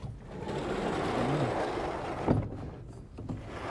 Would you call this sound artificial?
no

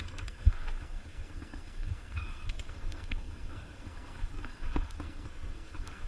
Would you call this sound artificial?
yes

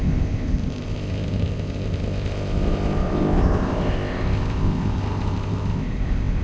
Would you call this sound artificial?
yes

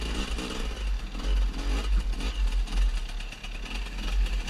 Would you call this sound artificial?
no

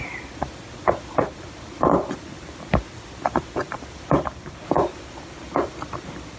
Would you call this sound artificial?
yes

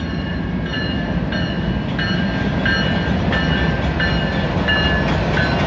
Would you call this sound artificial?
no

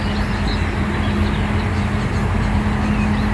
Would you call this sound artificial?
no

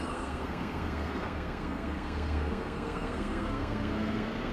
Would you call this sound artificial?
yes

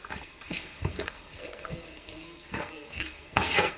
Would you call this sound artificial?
yes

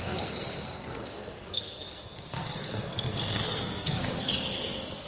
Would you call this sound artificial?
yes